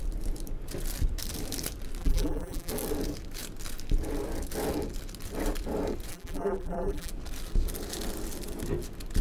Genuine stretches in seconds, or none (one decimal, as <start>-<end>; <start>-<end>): 0.0-2.0; 2.7-6.1; 7.1-9.2